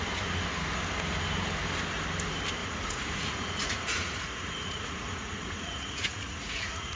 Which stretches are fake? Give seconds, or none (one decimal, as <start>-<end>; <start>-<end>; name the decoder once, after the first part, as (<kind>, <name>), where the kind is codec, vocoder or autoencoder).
2.6-7.0 (vocoder, Vocos)